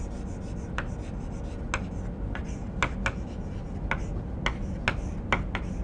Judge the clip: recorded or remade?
recorded